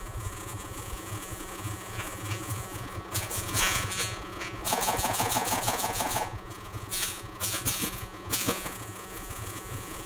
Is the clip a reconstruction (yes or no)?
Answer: yes